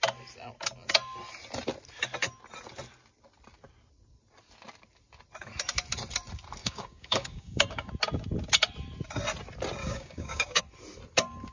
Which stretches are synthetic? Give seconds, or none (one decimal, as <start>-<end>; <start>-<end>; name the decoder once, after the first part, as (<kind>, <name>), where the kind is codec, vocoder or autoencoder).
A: 6.6-7.9 (codec, DAC); 9.8-10.6